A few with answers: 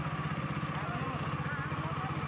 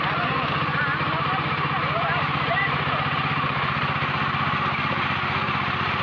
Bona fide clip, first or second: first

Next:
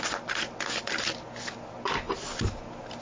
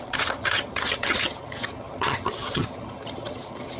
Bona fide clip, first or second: first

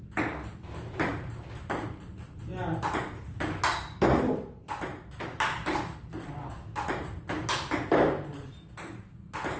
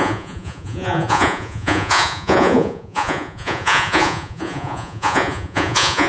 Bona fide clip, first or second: first